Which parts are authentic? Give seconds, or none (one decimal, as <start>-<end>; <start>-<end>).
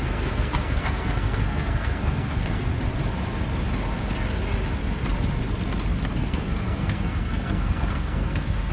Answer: 2.7-6.2